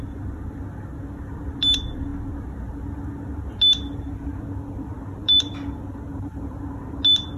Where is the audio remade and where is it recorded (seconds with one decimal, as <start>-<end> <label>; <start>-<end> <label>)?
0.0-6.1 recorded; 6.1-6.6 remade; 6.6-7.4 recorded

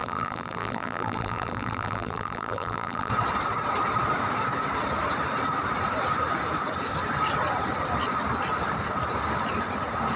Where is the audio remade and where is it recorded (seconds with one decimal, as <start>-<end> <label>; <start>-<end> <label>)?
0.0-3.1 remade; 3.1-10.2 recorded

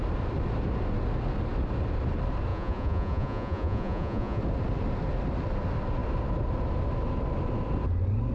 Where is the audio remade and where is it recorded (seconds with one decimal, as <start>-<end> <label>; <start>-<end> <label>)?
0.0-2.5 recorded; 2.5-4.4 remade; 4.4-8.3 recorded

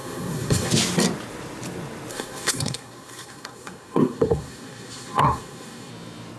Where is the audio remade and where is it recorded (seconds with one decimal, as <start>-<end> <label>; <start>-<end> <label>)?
0.0-0.7 remade; 0.7-2.1 recorded; 2.1-5.9 remade; 5.9-6.4 recorded